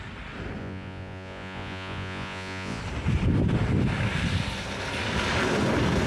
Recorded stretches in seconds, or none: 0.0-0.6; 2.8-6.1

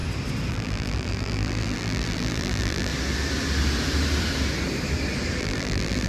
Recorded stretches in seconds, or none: 0.0-0.5; 2.9-5.4